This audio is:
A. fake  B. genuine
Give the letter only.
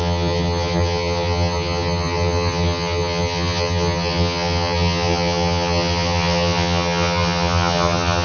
A